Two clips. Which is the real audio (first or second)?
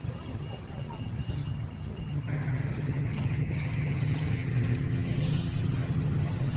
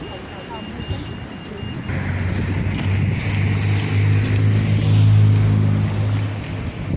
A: second